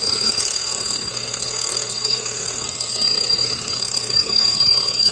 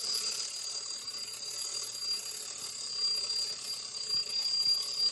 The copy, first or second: first